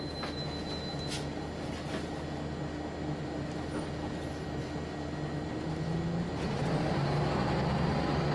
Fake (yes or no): no